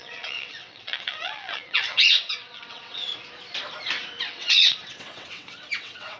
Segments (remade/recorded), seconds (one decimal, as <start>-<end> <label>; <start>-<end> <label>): 0.0-3.1 remade; 3.1-4.3 recorded; 4.3-6.2 remade